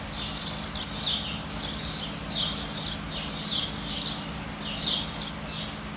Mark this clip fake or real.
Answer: real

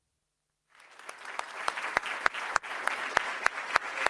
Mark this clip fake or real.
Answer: real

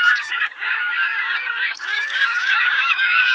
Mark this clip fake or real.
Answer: fake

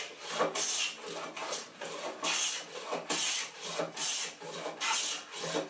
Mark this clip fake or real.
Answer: real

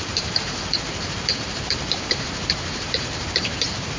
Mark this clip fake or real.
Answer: fake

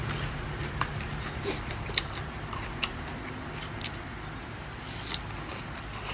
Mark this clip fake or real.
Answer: real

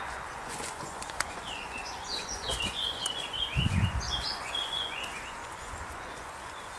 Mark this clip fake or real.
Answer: fake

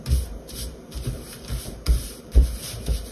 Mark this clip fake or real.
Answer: fake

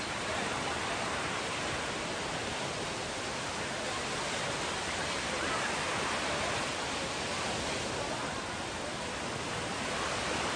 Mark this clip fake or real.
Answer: real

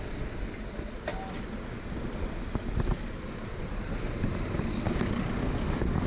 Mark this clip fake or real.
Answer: real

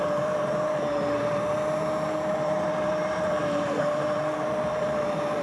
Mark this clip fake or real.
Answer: fake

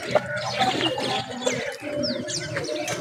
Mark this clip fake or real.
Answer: real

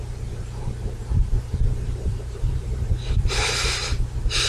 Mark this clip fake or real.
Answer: fake